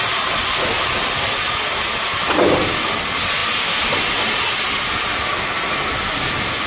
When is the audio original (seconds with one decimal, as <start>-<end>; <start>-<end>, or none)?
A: 0.0-6.7